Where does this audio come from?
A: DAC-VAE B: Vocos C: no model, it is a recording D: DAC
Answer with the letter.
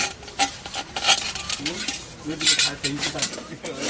C